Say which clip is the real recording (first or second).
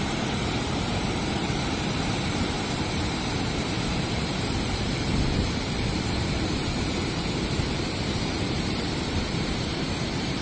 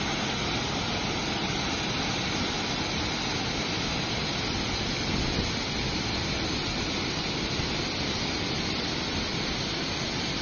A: second